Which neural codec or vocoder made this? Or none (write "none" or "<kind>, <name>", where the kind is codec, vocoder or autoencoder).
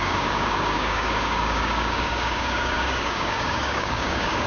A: codec, DAC